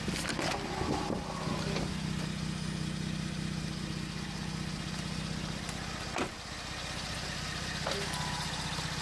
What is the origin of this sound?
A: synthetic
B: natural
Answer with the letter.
B